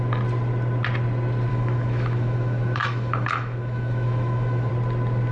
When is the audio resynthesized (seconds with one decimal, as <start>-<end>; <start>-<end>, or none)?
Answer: 1.5-4.7

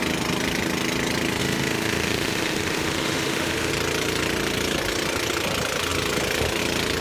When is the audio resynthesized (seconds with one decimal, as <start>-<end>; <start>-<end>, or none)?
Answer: 1.4-3.7